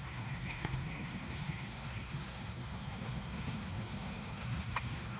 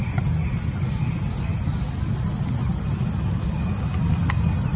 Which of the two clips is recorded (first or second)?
second